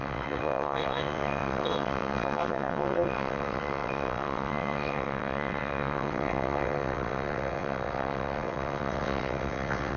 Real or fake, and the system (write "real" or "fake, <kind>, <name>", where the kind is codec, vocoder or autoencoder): fake, vocoder, WaveNeXt